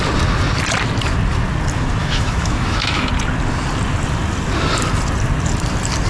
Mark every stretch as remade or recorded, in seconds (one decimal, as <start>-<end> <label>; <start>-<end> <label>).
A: 0.0-2.0 recorded; 2.0-3.1 remade; 3.1-6.1 recorded